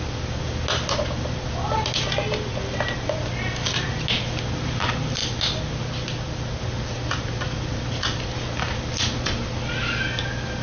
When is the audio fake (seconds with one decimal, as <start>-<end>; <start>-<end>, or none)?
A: none